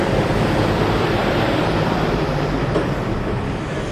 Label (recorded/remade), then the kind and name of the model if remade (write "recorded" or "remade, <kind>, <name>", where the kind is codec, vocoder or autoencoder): remade, vocoder, BigVGAN v2